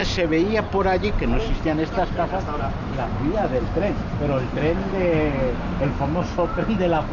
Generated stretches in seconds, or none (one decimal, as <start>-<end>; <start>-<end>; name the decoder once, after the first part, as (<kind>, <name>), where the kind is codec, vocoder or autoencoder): none